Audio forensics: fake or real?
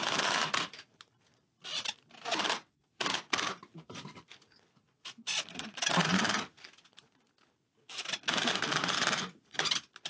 real